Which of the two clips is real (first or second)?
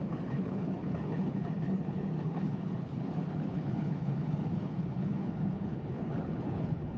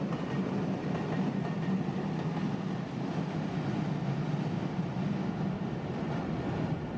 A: second